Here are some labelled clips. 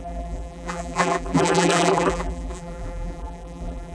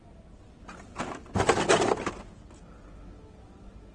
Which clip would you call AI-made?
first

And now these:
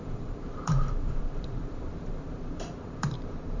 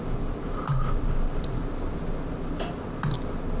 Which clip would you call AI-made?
first